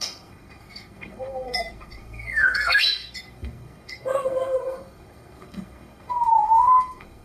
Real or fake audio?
fake